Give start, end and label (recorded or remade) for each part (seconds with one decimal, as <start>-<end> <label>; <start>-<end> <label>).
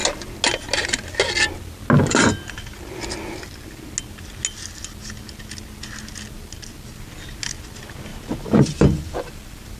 0.0-8.1 recorded; 8.1-9.8 remade